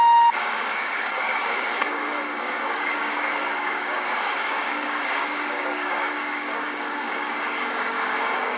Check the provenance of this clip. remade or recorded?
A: remade